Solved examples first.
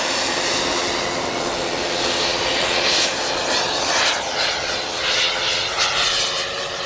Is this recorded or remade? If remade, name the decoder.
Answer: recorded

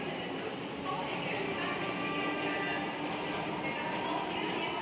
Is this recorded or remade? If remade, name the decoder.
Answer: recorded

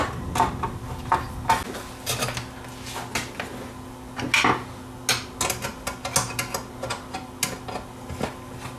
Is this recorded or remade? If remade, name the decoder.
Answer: recorded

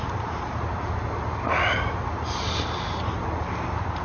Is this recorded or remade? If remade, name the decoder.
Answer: recorded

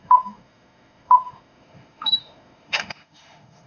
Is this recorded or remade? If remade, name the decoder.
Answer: remade, autoencoder, DAC-VAE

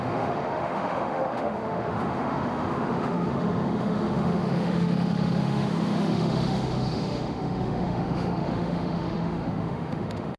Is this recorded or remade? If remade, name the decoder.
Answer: remade, autoencoder, DAC-VAE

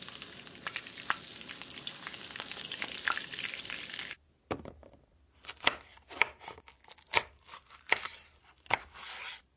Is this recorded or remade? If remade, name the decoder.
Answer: recorded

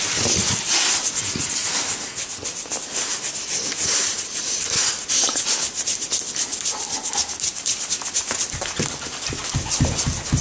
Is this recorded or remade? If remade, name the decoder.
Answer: recorded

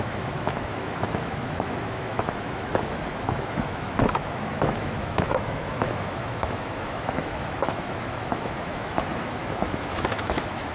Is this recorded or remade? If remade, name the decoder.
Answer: remade, autoencoder, DAC-VAE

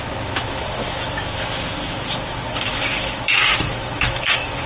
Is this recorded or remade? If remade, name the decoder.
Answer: remade, autoencoder, DAC-VAE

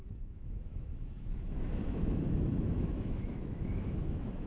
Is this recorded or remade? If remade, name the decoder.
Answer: remade, autoencoder, DAC-VAE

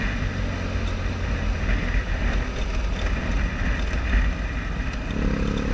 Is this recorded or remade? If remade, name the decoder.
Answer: recorded